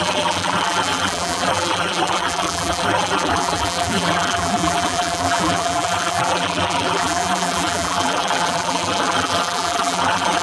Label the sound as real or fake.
fake